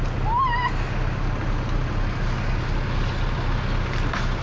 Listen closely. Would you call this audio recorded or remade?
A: recorded